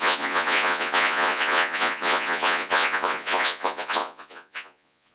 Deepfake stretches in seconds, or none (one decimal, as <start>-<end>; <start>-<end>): 0.0-5.1

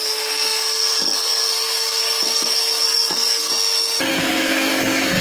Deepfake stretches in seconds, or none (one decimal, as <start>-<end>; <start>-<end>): 0.0-3.5; 4.1-5.2

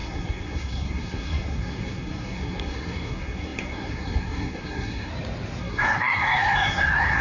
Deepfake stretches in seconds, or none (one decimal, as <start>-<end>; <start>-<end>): 0.0-5.1; 5.6-7.2

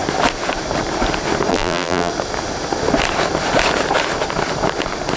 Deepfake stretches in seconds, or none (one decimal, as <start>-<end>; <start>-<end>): 1.5-2.1

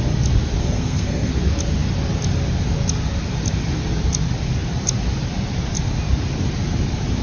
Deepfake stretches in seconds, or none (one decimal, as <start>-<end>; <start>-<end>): 0.6-1.3